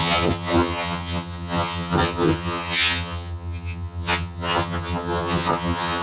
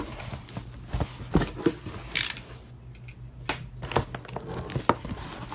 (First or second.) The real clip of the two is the second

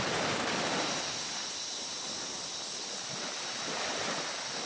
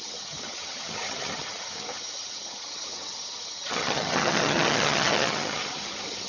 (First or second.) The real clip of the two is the first